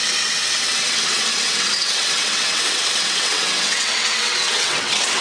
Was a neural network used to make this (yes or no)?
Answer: yes